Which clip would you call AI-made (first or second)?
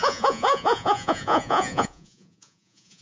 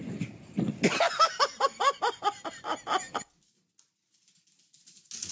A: first